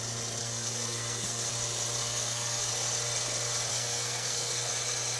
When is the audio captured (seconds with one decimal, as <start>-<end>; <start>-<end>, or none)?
0.0-0.4; 1.5-2.0; 2.7-3.7; 4.7-5.2